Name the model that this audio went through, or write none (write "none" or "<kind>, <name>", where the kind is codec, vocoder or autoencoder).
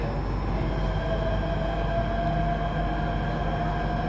none